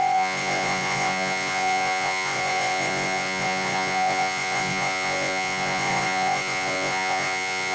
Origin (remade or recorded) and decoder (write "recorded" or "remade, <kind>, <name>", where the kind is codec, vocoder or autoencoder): remade, vocoder, Vocos